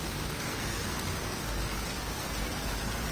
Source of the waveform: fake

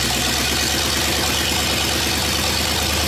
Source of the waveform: real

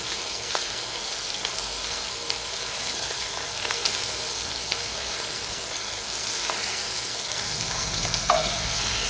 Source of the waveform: fake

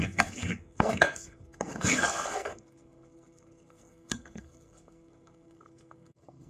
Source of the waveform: fake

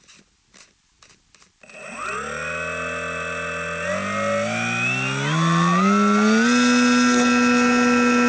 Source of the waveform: real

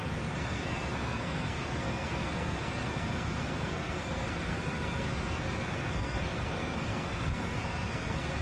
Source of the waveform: fake